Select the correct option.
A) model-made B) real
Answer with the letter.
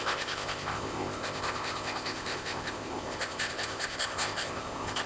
A